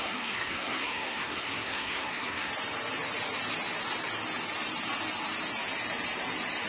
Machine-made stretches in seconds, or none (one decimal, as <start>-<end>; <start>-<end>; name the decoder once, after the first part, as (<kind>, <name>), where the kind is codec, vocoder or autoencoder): 0.0-2.5 (codec, SNAC)